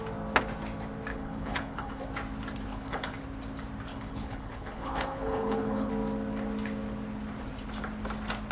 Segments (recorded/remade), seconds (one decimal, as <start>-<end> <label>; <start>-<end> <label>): 0.0-1.1 recorded; 1.1-2.0 remade; 2.0-2.7 recorded; 2.7-3.2 remade; 3.2-3.9 recorded; 3.9-5.9 remade; 5.9-8.5 recorded